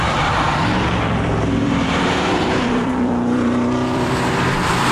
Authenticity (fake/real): fake